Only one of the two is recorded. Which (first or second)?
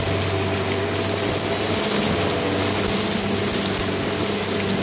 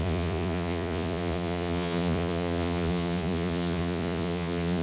first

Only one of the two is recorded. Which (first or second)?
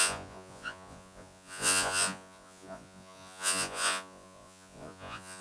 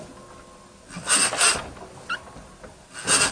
second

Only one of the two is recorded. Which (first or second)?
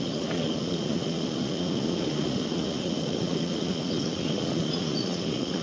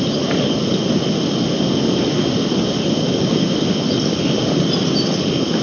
second